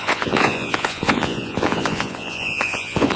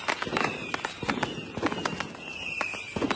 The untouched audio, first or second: second